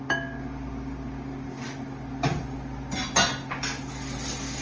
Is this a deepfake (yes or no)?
no